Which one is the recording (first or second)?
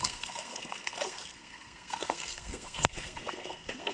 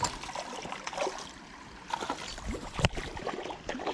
second